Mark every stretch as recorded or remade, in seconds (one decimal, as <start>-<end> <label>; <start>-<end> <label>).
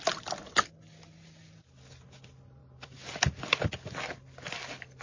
0.0-5.0 recorded